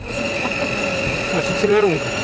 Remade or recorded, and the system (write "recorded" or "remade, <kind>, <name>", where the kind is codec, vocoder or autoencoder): remade, vocoder, Vocos